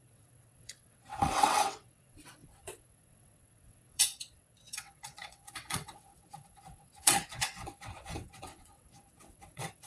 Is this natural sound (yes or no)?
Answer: no